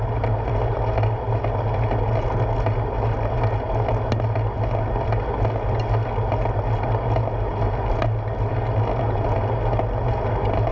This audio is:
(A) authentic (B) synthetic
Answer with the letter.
A